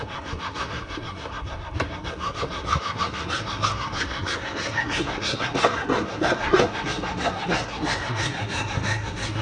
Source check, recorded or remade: remade